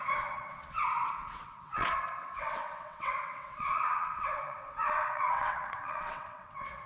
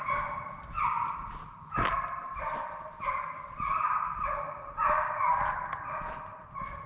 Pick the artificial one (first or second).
first